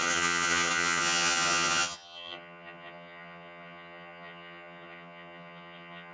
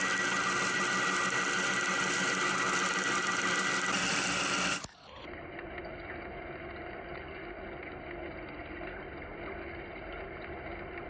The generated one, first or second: first